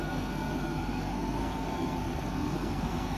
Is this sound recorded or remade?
remade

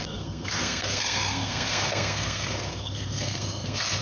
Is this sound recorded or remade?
remade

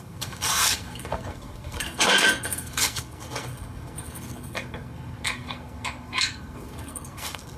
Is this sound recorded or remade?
remade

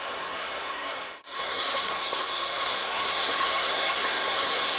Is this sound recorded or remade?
remade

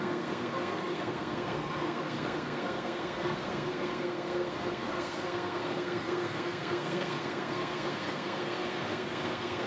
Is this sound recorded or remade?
remade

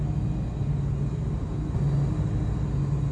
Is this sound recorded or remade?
recorded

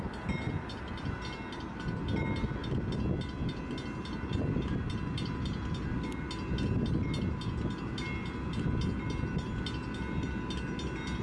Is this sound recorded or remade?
recorded